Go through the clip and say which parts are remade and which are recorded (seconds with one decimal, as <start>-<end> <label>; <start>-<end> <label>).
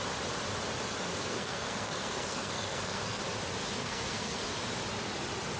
0.0-1.1 recorded; 1.1-3.2 remade; 3.2-3.8 recorded; 3.8-4.4 remade; 4.4-5.6 recorded